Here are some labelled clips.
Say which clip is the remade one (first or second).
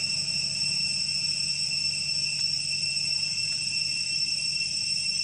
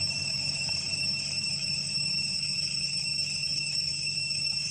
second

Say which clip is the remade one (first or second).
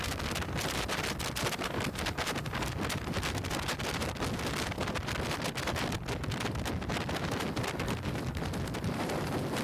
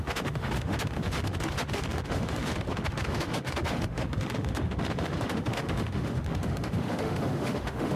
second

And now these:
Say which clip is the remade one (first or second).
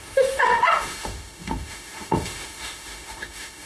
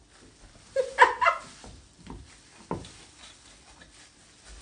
first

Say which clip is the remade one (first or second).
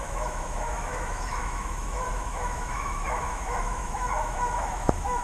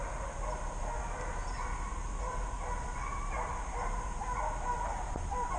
first